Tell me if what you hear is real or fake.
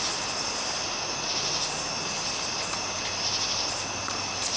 real